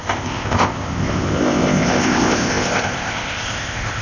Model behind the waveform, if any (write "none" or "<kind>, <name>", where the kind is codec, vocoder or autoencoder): codec, ZipCodec